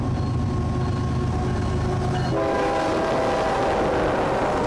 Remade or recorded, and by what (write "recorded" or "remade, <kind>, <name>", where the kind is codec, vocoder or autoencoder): recorded